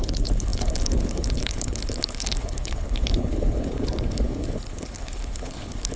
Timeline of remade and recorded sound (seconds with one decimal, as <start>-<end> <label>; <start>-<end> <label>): 0.0-6.0 remade